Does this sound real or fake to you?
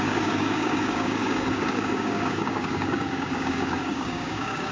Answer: fake